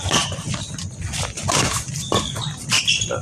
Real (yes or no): yes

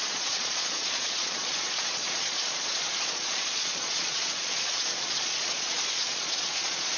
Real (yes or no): no